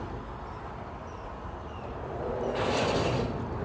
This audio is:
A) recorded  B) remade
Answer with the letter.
A